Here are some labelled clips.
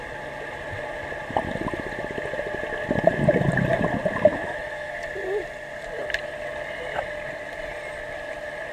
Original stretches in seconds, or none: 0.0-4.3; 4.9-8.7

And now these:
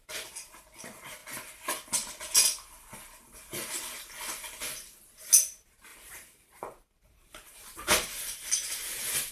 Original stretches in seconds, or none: 0.0-5.9; 8.5-9.3

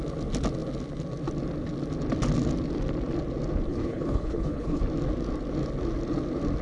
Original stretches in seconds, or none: 0.0-3.7; 4.8-6.6